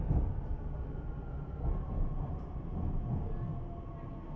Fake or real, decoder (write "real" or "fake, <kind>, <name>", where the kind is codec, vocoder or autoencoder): real